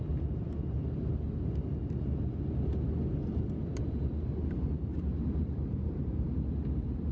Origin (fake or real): real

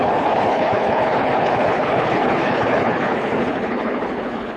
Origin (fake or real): fake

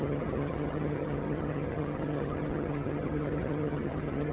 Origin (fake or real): fake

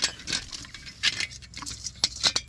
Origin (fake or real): real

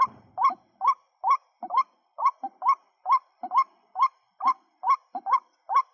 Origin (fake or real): real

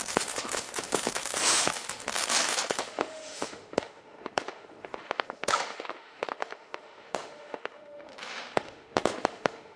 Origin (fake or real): fake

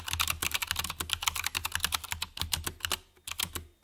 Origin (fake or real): real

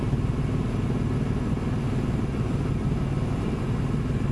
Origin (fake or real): real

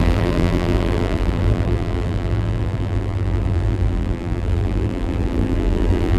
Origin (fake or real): fake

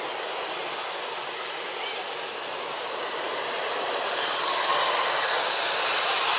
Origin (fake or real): real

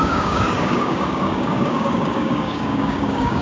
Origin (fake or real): fake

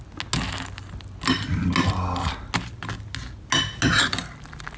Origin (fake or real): real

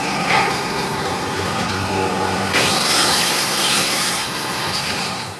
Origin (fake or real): fake